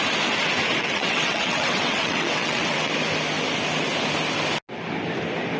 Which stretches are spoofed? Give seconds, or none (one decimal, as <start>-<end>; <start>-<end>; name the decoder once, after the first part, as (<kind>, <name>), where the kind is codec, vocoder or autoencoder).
0.8-2.9 (vocoder, WaveNeXt)